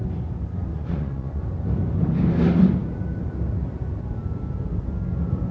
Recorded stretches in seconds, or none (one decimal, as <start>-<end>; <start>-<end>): 0.0-0.7; 1.4-5.5